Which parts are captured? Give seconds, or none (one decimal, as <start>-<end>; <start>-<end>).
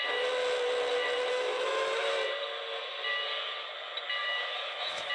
0.0-1.3; 2.1-4.2